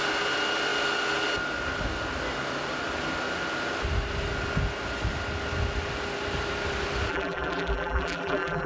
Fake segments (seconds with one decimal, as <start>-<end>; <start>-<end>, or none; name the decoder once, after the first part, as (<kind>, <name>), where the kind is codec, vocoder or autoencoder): 7.1-8.7 (vocoder, BigVGAN v2)